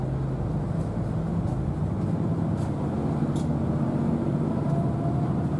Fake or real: real